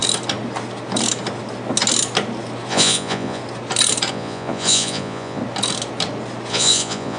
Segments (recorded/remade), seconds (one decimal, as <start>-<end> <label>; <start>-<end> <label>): 0.0-2.7 recorded; 2.7-3.4 remade; 3.4-4.1 recorded; 4.1-5.4 remade; 5.4-6.5 recorded; 6.5-7.2 remade